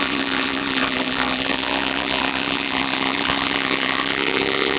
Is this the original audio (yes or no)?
no